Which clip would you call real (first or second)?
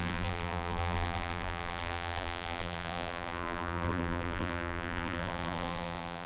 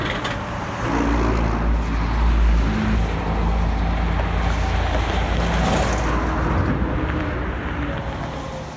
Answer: second